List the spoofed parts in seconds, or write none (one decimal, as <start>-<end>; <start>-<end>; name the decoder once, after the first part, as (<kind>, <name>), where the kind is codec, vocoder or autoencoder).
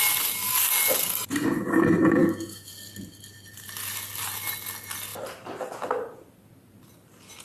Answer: 2.2-2.7 (autoencoder, DAC-VAE)